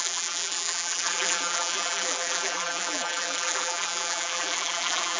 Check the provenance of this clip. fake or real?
fake